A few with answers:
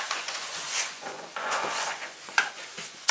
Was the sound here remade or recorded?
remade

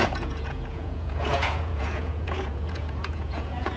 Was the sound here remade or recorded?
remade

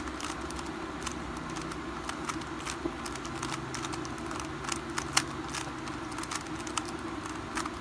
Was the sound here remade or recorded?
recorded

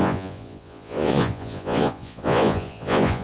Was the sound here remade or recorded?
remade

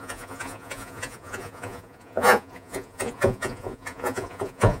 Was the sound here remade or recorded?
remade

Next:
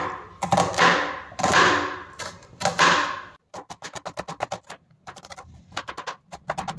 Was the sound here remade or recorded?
recorded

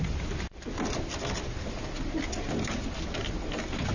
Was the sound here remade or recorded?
recorded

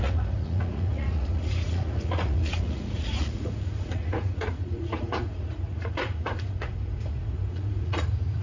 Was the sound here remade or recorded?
remade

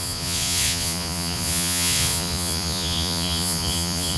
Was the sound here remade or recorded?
remade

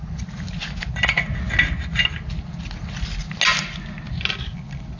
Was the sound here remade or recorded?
recorded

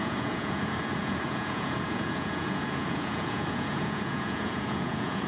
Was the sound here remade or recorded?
remade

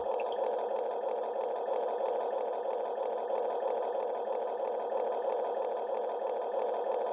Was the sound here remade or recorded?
recorded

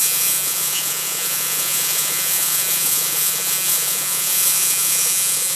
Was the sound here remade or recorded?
remade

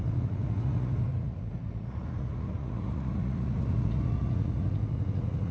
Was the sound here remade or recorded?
remade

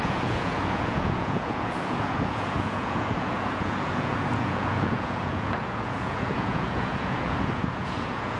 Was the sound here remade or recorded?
remade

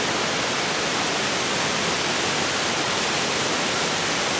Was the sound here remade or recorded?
recorded